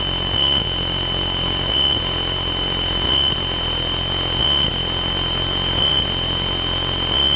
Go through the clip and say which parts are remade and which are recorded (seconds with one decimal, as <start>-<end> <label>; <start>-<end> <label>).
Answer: 0.0-7.4 recorded